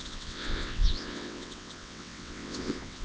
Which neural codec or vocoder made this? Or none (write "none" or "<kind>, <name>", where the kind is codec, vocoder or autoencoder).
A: vocoder, WaveNeXt